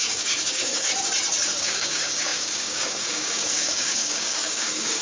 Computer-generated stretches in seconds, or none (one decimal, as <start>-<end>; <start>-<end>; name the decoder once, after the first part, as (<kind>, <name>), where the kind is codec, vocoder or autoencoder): 0.0-0.9 (codec, DAC); 1.6-5.0